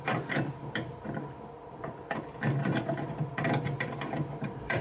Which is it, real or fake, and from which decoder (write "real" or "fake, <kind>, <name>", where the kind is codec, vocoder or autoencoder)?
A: fake, vocoder, BigVGAN v2